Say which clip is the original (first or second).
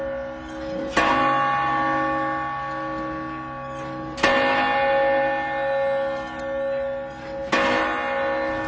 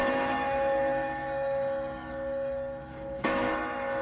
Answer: first